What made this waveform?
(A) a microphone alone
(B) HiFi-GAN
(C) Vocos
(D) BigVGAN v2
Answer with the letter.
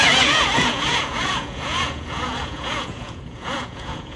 C